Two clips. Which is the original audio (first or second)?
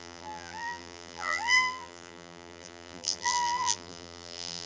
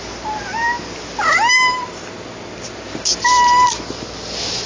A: second